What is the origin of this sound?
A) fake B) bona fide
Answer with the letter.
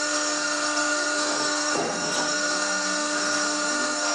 A